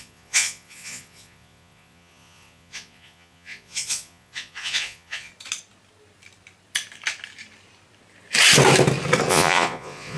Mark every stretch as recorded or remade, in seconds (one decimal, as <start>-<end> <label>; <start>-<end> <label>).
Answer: 0.0-5.3 remade; 5.3-9.3 recorded; 9.3-10.2 remade